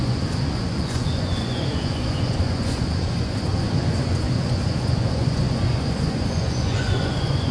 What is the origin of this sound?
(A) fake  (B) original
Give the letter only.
A